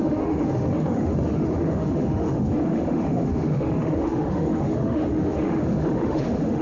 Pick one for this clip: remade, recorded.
remade